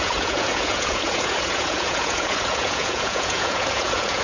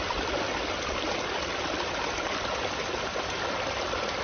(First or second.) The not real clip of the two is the first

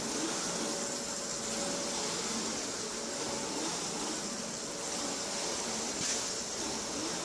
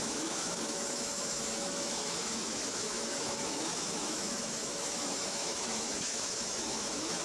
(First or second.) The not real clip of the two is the second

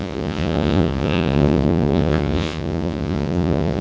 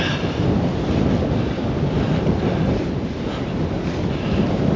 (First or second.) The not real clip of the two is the first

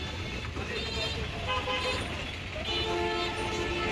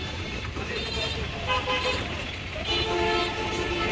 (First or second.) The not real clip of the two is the second